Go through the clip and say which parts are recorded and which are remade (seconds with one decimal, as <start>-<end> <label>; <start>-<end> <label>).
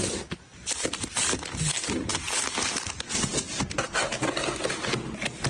0.0-5.5 recorded